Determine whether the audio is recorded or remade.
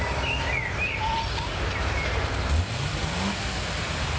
recorded